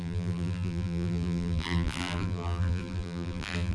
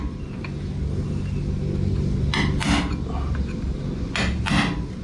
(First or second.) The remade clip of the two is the first